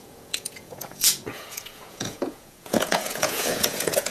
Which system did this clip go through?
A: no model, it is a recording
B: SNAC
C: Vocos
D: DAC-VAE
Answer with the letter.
C